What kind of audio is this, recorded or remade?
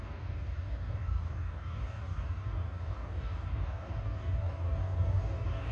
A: remade